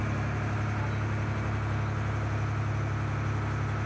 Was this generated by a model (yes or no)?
no